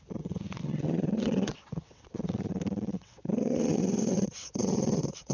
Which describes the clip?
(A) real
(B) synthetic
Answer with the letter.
B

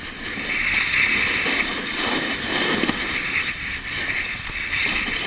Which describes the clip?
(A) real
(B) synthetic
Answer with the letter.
A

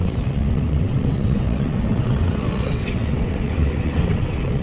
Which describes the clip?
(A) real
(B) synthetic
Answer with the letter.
B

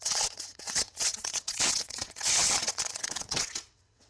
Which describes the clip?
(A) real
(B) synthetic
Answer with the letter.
B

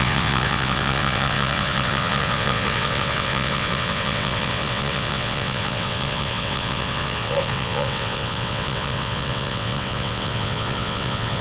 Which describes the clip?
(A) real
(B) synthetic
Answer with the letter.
B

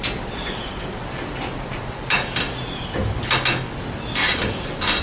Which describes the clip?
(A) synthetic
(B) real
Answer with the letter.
B